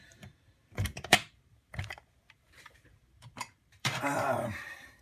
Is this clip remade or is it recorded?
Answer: remade